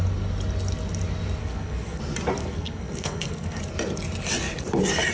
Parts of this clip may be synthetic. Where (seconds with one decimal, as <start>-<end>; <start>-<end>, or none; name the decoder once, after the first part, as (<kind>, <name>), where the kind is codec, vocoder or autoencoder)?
1.4-2.0 (codec, SNAC); 2.4-3.6